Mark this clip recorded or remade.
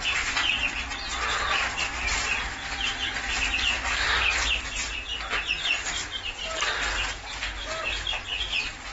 recorded